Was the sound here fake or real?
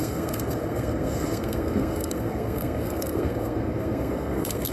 fake